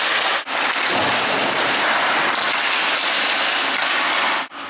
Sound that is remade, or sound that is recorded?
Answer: recorded